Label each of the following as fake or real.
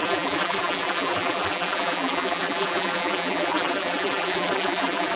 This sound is fake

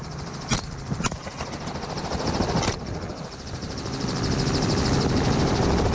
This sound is fake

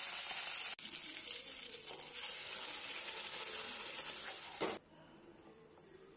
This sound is real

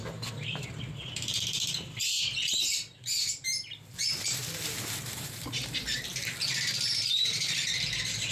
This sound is fake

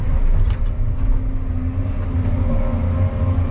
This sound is real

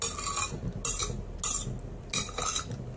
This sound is real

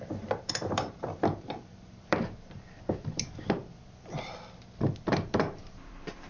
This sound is fake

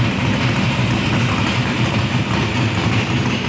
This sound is real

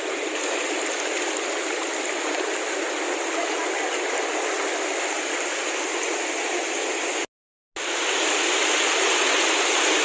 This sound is real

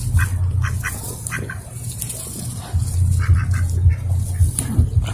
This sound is real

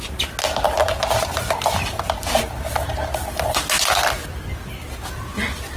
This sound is real